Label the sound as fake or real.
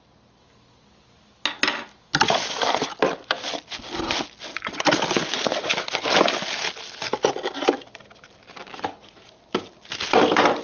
real